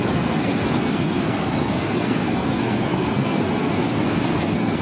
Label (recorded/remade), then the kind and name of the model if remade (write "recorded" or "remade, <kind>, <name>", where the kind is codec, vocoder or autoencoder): remade, codec, SNAC